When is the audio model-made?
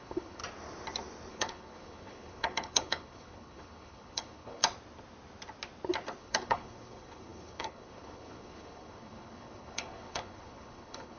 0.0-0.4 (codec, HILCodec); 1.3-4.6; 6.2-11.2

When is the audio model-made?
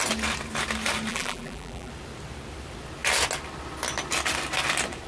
1.1-1.9 (vocoder, BigVGAN v2)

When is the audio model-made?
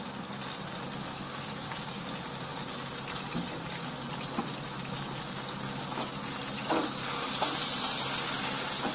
1.1-2.0 (codec, DAC)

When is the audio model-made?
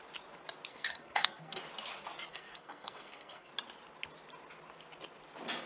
0.7-1.6 (codec, SNAC); 2.3-3.5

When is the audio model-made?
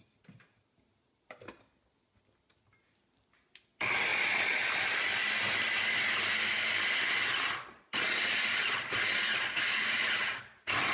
4.1-4.6 (vocoder, Vocos)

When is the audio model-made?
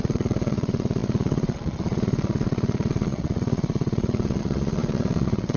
0.0-5.6 (vocoder, Vocos)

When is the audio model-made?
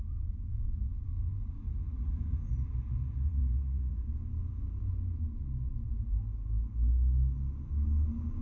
0.0-4.0 (vocoder, Vocos)